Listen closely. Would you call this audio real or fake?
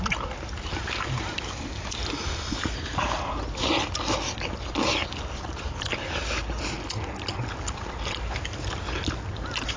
real